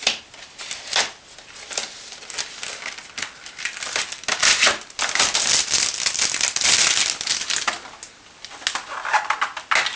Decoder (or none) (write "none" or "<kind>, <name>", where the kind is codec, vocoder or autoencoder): none